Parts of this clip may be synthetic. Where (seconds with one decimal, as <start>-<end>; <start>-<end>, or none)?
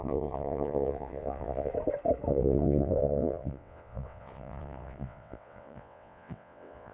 0.0-1.7; 2.3-6.9